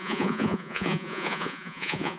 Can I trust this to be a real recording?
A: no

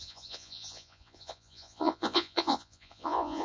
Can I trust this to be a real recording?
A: no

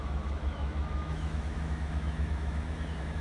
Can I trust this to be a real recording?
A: no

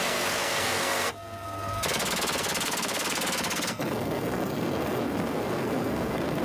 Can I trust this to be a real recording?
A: no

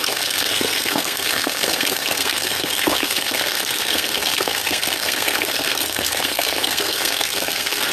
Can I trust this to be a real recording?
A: no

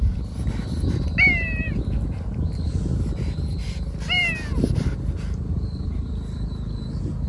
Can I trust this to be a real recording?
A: yes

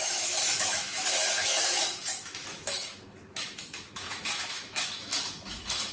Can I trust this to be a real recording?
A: no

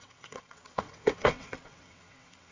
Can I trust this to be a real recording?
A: no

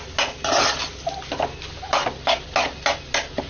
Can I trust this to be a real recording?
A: yes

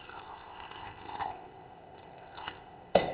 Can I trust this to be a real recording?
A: no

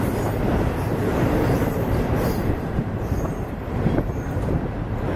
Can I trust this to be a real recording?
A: no